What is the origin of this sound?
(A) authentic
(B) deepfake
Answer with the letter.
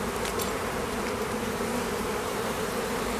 A